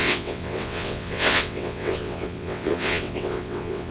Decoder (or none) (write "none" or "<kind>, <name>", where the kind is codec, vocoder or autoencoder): vocoder, WaveNeXt